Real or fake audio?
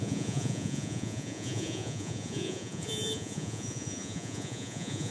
fake